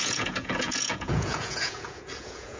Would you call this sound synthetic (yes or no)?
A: yes